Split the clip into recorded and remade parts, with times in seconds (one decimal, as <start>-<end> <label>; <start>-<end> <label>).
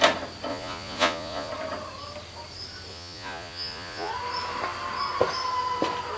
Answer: 0.0-0.5 recorded; 0.5-1.5 remade; 1.5-2.9 recorded; 2.9-4.1 remade; 4.1-6.2 recorded